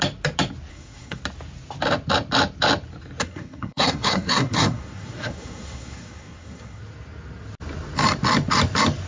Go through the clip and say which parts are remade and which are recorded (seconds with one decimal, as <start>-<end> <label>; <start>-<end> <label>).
0.0-0.7 recorded; 0.7-1.2 remade; 1.2-3.2 recorded; 3.2-6.8 remade; 6.8-9.1 recorded